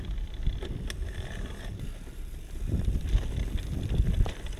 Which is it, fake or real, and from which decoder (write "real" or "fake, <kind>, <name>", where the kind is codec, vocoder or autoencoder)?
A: real